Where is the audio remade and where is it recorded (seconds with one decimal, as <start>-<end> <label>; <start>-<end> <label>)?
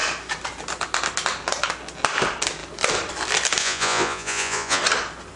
0.0-3.6 recorded; 3.6-4.8 remade; 4.8-5.4 recorded